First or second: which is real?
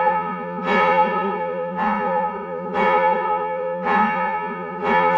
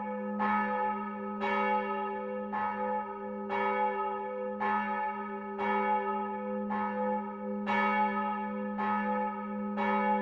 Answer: second